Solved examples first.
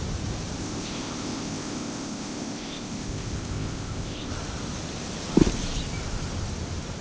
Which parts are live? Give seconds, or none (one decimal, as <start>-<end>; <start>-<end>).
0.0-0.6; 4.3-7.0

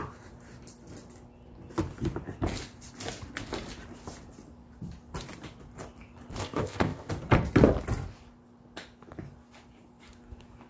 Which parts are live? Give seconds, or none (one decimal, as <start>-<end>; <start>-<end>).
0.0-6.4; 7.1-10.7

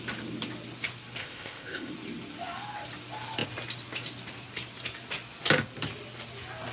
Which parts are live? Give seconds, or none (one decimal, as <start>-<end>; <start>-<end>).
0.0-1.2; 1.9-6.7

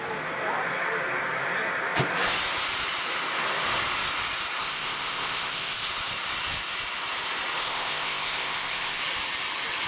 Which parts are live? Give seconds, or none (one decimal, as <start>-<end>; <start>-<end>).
0.0-4.6; 5.9-7.6; 9.0-9.9

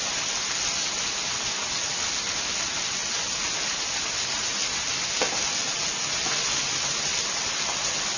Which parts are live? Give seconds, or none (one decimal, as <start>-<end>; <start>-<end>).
0.0-8.2

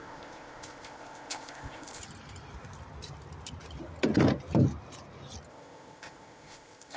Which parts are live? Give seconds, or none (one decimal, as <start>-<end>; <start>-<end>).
2.0-5.5

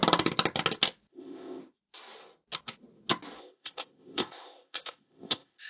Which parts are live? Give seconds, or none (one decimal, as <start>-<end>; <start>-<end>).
0.0-1.1; 1.6-3.4